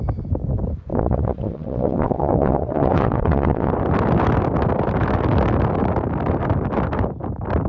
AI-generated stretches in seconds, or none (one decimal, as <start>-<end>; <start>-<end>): 0.9-3.7